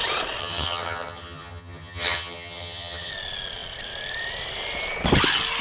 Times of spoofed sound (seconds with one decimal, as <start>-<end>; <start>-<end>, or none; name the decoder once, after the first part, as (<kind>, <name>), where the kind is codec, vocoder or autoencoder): 0.4-3.1 (vocoder, HiFi-GAN)